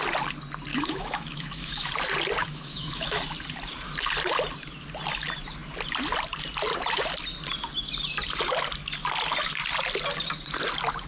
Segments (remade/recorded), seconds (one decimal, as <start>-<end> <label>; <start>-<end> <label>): 0.0-0.7 recorded; 0.7-1.9 remade; 1.9-2.4 recorded; 2.4-3.2 remade; 3.2-11.1 recorded